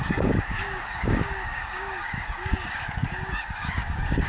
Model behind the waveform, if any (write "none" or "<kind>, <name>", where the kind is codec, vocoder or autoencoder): codec, DAC